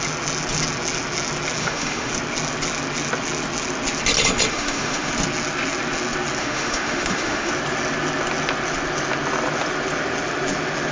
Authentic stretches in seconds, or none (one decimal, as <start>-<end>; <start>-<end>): 0.0-1.6; 2.1-4.5; 5.1-6.4; 7.5-10.9